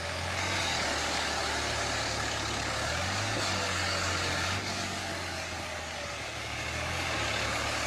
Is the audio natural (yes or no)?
no